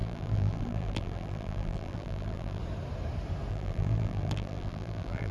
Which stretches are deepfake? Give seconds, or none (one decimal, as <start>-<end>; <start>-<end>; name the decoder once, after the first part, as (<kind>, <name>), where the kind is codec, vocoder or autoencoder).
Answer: 0.0-2.6 (vocoder, BigVGAN v2); 3.5-5.3